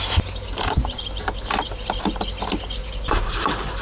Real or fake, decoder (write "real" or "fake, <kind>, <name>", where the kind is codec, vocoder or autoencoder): real